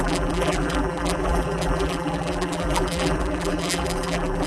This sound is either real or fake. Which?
fake